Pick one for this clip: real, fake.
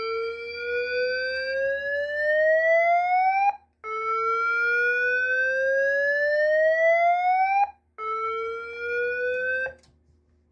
real